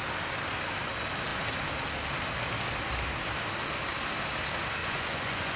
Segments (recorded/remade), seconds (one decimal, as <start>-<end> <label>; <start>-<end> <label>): 0.0-4.8 recorded; 4.8-5.6 remade